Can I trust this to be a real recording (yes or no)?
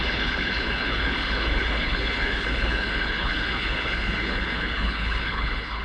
no